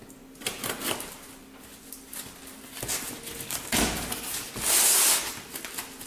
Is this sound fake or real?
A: real